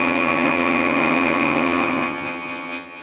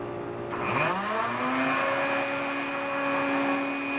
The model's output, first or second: first